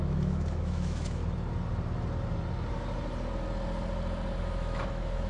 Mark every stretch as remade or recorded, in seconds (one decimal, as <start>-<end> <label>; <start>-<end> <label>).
0.0-1.2 remade; 1.2-4.4 recorded; 4.4-5.3 remade

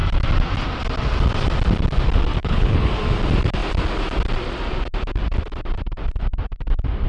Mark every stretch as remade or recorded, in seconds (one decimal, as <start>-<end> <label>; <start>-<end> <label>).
0.0-2.4 recorded; 2.4-2.9 remade; 2.9-7.1 recorded

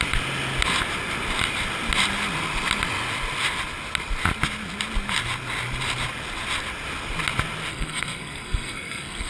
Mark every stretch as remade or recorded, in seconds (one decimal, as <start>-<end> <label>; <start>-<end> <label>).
0.0-7.7 recorded; 7.7-9.3 remade

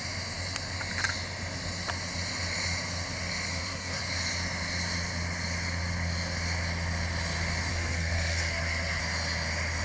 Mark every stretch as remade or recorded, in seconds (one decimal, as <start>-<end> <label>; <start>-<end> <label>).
0.0-3.5 recorded; 3.5-4.0 remade; 4.0-7.7 recorded; 7.7-9.0 remade; 9.0-9.8 recorded

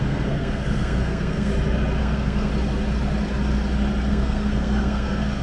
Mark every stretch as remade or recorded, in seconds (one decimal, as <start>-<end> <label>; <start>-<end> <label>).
0.0-1.5 remade; 1.5-2.0 recorded; 2.0-2.5 remade; 2.5-4.1 recorded; 4.1-5.4 remade

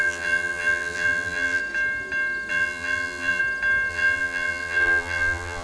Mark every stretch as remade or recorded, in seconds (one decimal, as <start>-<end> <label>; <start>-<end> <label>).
0.0-1.6 remade; 1.6-2.5 recorded; 2.5-3.4 remade; 3.4-3.9 recorded; 3.9-5.6 remade

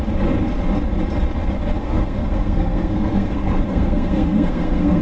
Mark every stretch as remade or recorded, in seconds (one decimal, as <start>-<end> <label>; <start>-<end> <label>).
0.0-1.8 recorded; 1.8-5.0 remade

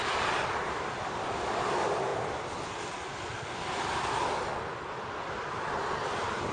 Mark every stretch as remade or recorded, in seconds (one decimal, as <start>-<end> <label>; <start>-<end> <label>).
0.0-6.5 recorded